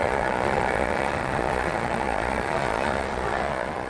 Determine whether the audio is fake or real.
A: fake